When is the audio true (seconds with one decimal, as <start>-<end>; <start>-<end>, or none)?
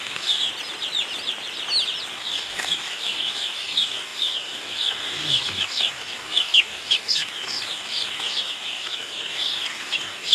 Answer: 0.5-2.1